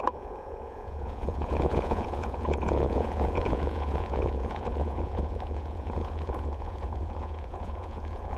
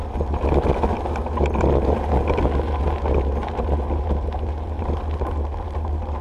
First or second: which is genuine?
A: second